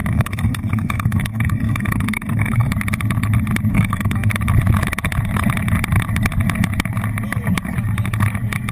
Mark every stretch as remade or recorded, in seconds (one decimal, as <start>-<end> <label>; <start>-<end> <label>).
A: 0.0-2.7 remade; 2.7-3.7 recorded; 3.7-4.3 remade; 4.3-8.7 recorded